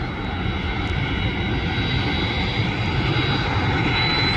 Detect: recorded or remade recorded